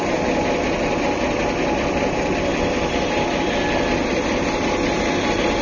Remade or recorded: recorded